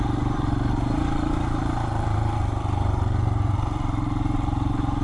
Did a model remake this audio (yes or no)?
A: yes